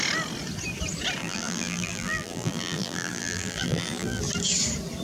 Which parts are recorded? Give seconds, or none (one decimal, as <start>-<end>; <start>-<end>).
0.0-1.2; 4.2-5.0